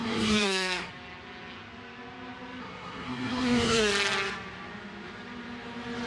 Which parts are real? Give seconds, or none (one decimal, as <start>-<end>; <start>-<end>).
0.9-2.6; 3.9-6.1